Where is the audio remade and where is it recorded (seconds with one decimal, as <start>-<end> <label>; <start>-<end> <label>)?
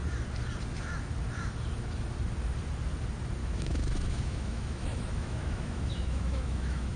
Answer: 0.0-3.4 recorded; 3.4-7.0 remade